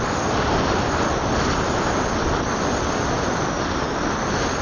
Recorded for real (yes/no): yes